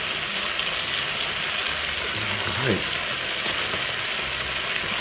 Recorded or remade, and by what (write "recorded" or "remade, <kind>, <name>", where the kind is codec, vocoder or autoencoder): recorded